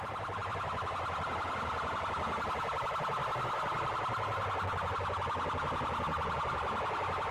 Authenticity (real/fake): real